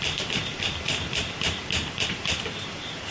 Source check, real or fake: fake